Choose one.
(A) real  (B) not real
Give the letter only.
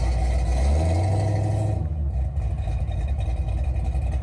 A